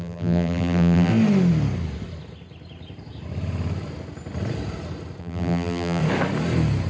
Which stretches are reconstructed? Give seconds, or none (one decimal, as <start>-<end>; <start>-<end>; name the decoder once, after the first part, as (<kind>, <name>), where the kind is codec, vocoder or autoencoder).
0.0-1.1 (vocoder, BigVGAN v2); 5.2-6.0